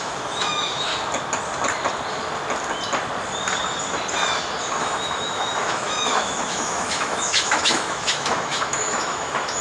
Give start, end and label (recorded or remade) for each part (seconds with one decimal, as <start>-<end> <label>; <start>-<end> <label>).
0.0-0.9 remade; 0.9-4.8 recorded; 4.8-9.6 remade